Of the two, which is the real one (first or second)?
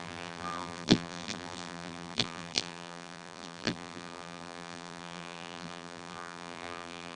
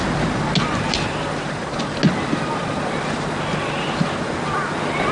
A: second